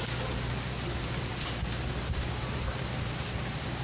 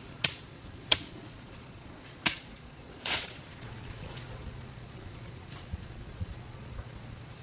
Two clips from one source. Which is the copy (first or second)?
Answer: second